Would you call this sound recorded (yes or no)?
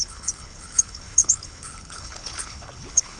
no